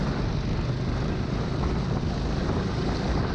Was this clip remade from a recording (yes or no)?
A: no